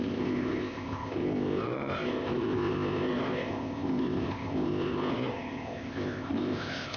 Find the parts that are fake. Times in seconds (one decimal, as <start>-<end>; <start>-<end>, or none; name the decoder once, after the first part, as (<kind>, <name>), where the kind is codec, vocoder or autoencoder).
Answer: 0.0-7.0 (codec, ZipCodec)